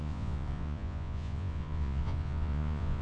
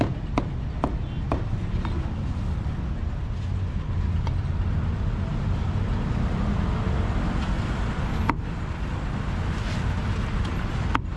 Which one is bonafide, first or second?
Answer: second